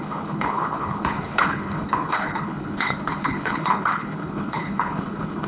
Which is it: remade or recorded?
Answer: remade